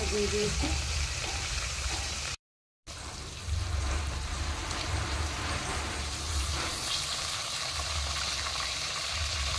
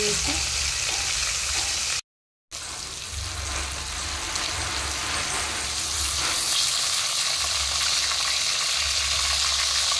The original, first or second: second